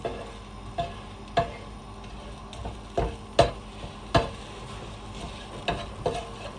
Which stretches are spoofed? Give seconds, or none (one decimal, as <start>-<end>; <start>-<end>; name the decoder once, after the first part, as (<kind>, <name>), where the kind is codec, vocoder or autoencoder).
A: none